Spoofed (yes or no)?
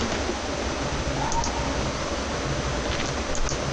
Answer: no